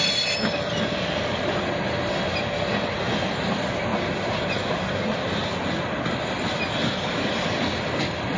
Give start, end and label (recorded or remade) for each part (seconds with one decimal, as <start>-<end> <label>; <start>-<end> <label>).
0.0-8.4 recorded